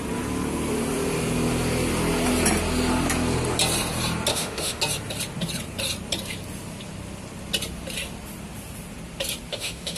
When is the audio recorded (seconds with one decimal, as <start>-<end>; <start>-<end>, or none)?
0.0-4.3; 4.8-9.5